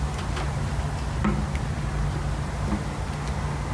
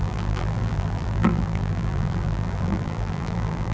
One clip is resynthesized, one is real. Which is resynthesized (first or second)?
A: second